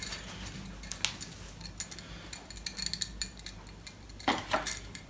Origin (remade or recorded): recorded